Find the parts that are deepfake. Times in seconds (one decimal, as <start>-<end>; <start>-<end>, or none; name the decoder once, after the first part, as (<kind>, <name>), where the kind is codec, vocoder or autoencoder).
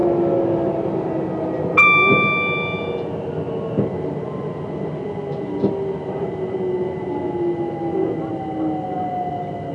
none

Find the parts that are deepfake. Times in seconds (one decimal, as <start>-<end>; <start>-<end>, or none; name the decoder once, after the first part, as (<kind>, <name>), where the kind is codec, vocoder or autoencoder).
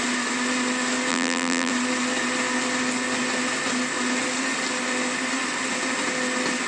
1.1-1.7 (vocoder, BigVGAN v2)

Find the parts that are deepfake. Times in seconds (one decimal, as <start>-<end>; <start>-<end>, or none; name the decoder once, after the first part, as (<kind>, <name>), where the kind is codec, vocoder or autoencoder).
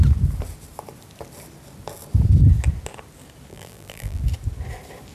3.5-4.2 (vocoder, BigVGAN v2)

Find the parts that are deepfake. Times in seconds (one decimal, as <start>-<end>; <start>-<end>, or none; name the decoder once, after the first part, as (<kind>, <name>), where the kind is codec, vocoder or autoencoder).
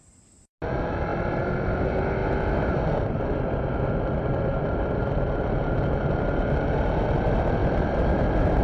7.6-8.6 (vocoder, BigVGAN v2)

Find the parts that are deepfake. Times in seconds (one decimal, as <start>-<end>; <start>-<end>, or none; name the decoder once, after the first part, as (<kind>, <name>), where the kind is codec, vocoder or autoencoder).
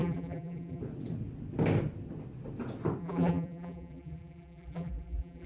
0.0-0.8 (vocoder, BigVGAN v2); 3.0-5.5